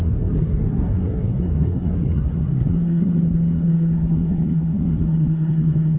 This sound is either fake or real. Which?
fake